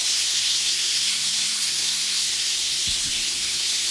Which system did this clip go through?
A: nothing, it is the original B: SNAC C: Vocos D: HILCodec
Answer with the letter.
B